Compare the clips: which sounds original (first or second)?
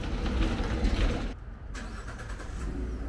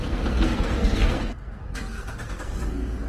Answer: first